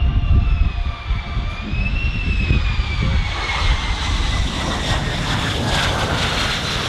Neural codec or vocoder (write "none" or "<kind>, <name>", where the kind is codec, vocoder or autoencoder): none